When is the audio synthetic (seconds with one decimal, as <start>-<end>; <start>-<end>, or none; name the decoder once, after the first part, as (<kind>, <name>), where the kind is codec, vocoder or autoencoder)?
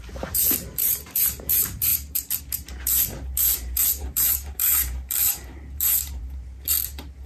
0.0-7.3 (vocoder, BigVGAN v2)